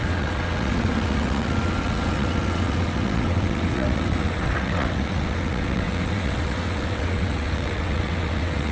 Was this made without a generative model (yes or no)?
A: no